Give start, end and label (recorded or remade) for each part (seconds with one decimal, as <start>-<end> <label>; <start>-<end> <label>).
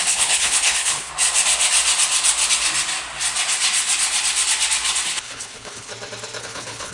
0.0-1.1 remade; 1.1-5.2 recorded; 5.2-5.9 remade; 5.9-6.4 recorded; 6.4-6.9 remade